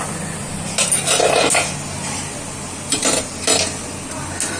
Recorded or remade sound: recorded